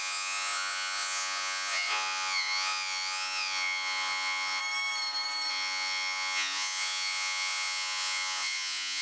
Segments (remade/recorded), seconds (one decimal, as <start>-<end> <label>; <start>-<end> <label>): 0.0-4.6 remade; 4.6-5.5 recorded; 5.5-9.0 remade